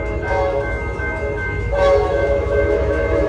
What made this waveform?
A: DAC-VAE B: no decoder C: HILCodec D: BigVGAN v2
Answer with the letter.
A